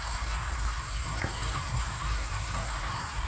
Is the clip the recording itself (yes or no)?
no